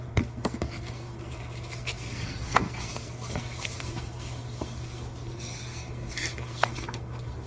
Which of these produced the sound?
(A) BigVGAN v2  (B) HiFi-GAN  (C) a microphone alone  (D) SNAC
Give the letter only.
D